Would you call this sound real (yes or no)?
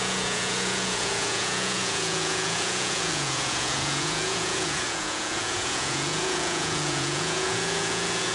no